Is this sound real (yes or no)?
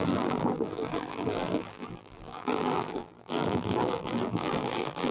no